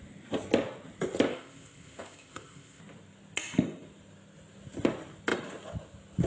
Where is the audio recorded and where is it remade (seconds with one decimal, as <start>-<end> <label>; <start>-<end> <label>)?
0.0-1.3 recorded; 1.3-2.8 remade; 2.8-6.3 recorded